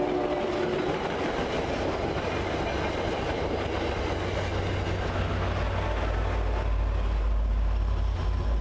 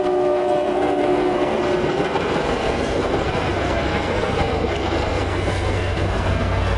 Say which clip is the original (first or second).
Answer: first